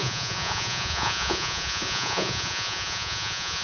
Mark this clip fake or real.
fake